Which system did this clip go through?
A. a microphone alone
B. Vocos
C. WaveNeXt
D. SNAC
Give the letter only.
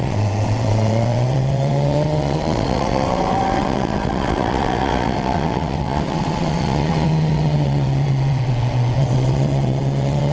C